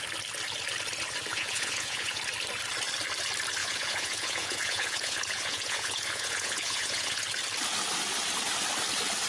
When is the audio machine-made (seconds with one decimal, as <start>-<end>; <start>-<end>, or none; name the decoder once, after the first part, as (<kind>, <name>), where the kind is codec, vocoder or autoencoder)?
1.3-2.2 (vocoder, Vocos); 3.6-7.2